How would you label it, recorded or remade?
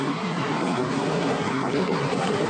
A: remade